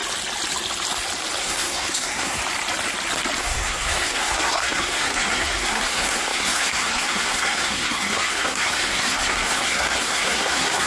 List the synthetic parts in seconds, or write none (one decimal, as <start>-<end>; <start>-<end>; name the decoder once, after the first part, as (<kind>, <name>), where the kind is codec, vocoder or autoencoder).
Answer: 1.4-2.4 (codec, SNAC); 3.4-10.9